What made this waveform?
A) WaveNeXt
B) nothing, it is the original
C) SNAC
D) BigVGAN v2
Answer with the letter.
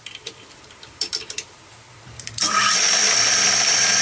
D